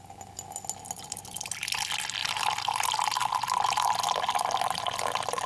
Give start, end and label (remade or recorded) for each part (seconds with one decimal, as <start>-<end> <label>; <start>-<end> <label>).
0.0-2.2 recorded; 2.2-3.6 remade; 3.6-5.5 recorded